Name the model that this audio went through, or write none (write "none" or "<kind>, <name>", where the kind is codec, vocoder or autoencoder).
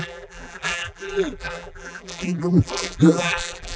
vocoder, BigVGAN v2